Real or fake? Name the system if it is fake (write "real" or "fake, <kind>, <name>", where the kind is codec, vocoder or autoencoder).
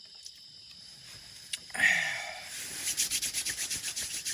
real